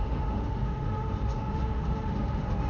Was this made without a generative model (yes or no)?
no